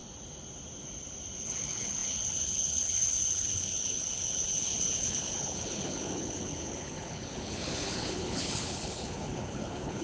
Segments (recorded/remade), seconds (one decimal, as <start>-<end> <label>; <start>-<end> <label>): 0.0-1.4 recorded; 1.4-10.0 remade